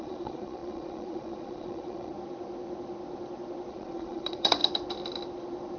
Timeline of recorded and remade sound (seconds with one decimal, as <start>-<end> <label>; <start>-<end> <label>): 0.0-2.1 remade; 2.1-3.7 recorded; 3.7-4.6 remade; 4.6-5.8 recorded

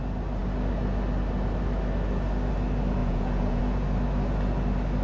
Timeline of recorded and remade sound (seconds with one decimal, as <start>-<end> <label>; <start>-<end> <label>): 0.0-3.0 recorded; 3.0-3.6 remade; 3.6-5.0 recorded

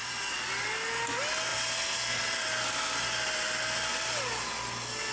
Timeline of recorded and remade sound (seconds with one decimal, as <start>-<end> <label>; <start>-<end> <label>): 0.0-5.1 recorded

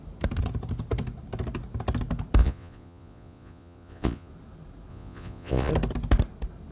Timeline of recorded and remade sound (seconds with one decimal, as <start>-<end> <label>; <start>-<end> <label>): 0.0-2.4 recorded; 2.4-4.3 remade; 4.3-4.9 recorded; 4.9-5.7 remade; 5.7-6.7 recorded

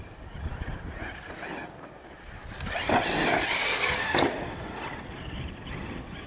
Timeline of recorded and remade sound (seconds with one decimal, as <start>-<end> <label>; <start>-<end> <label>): 0.0-6.3 recorded